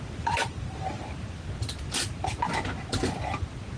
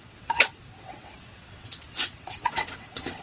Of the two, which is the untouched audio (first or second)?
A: first